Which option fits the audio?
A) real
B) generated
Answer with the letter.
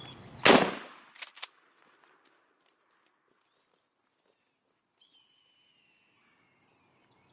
A